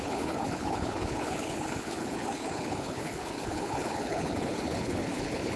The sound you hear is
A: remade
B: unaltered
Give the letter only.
A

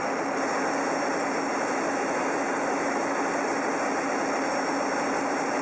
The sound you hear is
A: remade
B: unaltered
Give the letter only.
B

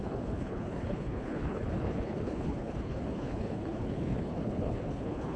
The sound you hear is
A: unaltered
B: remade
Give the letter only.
B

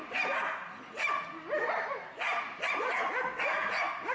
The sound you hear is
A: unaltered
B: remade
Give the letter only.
A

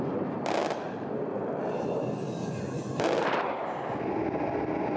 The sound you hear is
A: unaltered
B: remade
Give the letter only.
A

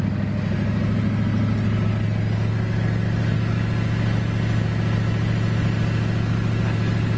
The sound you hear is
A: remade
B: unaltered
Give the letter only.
B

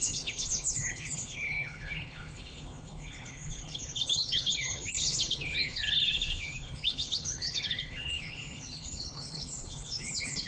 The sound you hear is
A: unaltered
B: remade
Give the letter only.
B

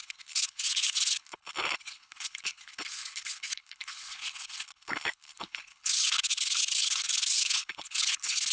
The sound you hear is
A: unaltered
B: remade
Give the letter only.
B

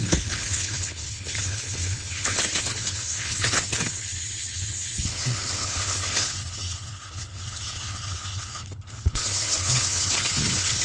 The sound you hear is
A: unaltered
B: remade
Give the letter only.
B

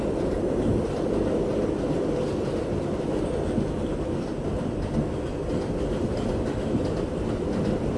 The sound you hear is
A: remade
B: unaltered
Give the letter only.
B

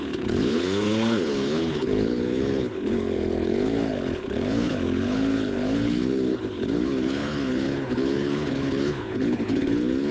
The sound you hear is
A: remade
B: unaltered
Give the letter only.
A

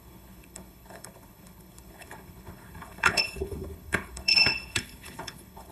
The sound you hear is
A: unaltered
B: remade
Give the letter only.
B